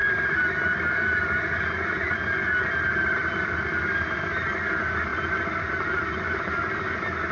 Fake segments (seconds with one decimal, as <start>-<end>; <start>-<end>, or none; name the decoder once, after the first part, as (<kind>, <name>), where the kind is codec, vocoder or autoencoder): none